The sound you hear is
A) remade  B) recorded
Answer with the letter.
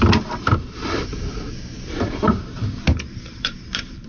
A